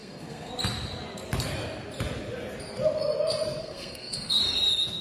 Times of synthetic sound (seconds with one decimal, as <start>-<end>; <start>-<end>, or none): 0.0-0.5; 3.6-4.4